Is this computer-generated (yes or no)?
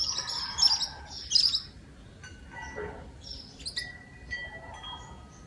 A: no